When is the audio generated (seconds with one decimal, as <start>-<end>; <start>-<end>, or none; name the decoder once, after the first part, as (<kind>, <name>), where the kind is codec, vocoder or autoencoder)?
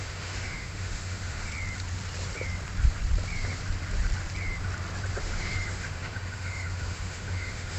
0.0-1.5 (autoencoder, DAC-VAE); 5.2-7.8